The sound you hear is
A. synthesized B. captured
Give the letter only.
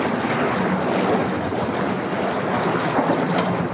B